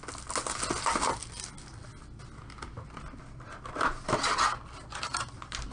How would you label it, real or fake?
real